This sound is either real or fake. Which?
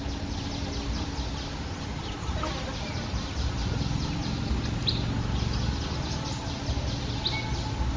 real